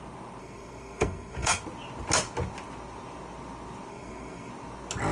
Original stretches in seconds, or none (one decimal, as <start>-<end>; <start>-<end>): 0.0-0.4; 1.6-3.9; 4.5-5.1